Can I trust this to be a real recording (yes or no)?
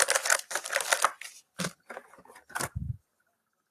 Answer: yes